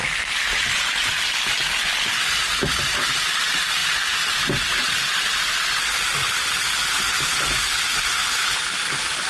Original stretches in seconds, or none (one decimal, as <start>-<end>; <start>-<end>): 0.0-9.3